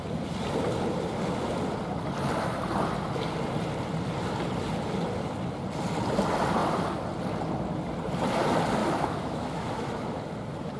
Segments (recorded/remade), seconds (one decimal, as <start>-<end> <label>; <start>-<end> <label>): 0.0-8.8 recorded; 8.8-10.0 remade; 10.0-10.8 recorded